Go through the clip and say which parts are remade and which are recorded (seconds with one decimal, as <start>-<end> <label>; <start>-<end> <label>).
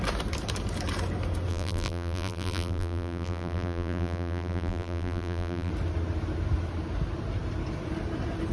0.0-1.5 recorded; 1.5-5.7 remade; 5.7-8.5 recorded